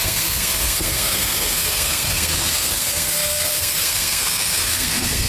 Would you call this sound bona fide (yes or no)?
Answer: no